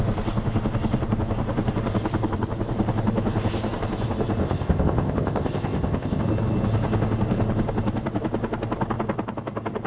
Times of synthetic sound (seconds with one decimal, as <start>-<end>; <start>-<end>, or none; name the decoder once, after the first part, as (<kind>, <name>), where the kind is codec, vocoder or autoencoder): 4.4-6.2 (codec, ZipCodec)